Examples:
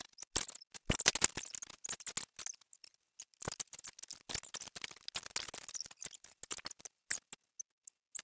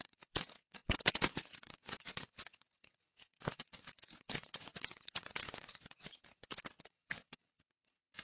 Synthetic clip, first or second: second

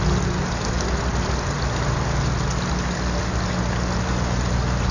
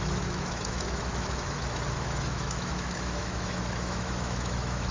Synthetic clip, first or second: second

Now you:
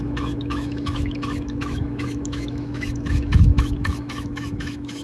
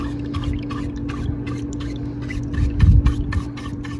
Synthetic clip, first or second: first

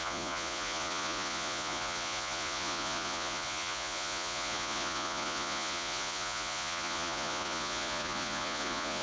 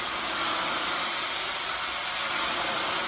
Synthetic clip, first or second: first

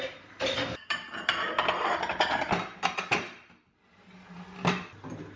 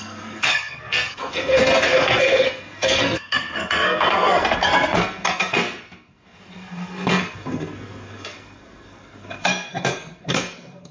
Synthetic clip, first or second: second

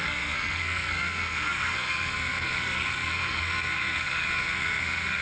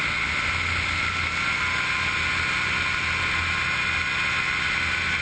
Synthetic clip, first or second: first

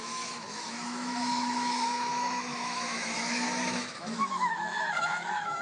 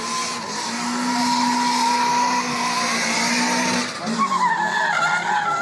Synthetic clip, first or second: first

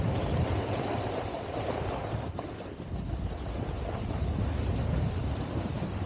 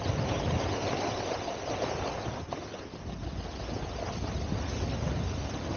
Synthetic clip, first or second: first